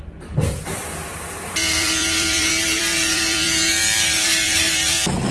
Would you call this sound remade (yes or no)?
yes